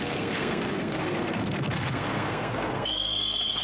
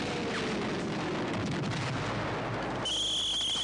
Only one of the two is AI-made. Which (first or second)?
first